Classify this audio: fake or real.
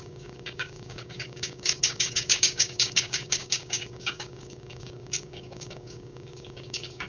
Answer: fake